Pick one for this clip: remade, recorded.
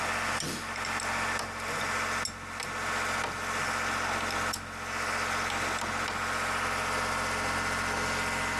recorded